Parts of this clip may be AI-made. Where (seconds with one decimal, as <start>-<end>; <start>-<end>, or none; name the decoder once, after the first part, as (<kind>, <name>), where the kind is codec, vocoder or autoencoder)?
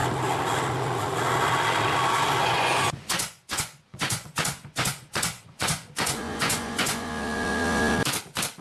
2.4-7.1 (vocoder, Vocos)